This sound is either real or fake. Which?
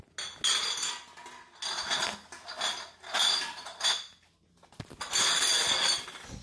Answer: real